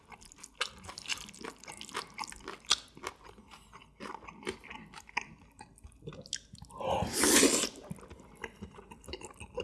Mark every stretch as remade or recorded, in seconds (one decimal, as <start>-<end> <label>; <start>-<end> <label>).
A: 0.0-9.6 recorded